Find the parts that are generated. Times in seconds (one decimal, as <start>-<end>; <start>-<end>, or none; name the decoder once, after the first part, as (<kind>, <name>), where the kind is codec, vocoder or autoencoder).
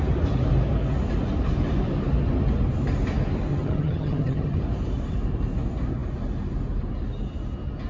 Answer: 3.5-4.6 (vocoder, HiFi-GAN)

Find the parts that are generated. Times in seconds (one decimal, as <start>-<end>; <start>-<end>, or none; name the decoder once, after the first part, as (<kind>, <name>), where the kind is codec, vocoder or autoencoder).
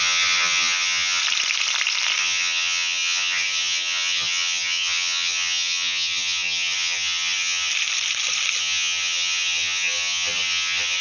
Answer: 0.0-1.2 (vocoder, HiFi-GAN); 2.2-7.7; 8.6-11.0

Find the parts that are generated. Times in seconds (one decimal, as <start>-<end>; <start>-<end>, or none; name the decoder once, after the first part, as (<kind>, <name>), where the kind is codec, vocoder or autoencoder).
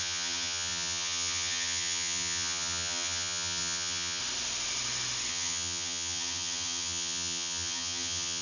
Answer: 0.0-4.2 (vocoder, HiFi-GAN); 5.3-8.4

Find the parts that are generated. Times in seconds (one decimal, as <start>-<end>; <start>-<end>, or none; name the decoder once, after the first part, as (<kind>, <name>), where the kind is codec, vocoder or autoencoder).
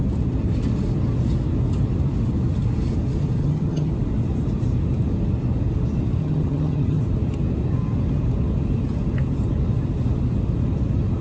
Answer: 3.4-3.9 (vocoder, HiFi-GAN); 6.2-7.0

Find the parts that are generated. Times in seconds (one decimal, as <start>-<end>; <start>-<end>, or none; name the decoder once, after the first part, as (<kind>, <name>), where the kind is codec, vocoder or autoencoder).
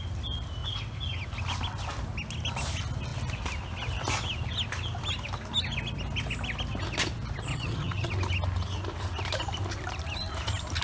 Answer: 7.5-8.1 (vocoder, HiFi-GAN)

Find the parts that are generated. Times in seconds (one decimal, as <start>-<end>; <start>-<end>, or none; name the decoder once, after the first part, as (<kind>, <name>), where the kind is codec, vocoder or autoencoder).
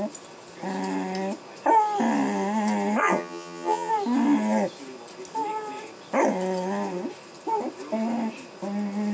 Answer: 3.0-3.9 (vocoder, HiFi-GAN)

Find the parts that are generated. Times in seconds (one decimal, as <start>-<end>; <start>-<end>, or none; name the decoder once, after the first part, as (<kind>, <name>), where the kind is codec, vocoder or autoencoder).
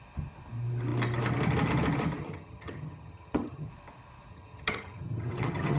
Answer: 2.2-3.7 (vocoder, HiFi-GAN); 4.3-5.8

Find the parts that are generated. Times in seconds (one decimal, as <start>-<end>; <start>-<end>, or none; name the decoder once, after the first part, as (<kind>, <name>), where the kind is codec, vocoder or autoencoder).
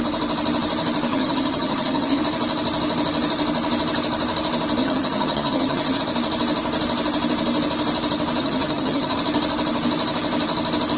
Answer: 1.1-2.2 (vocoder, HiFi-GAN); 4.8-6.0; 8.4-9.2